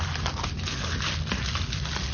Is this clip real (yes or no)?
yes